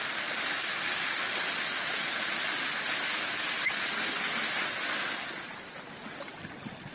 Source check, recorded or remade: recorded